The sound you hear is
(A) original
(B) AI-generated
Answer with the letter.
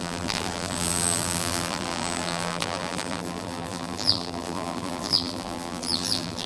B